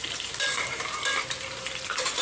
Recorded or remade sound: remade